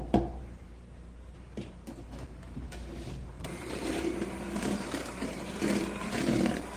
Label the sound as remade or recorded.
remade